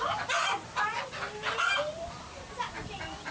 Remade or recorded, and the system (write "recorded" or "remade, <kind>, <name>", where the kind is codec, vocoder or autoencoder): remade, vocoder, BigVGAN v2